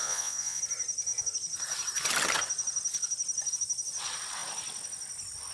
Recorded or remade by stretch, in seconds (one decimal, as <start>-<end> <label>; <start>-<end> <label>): 0.0-0.6 remade; 0.6-5.5 recorded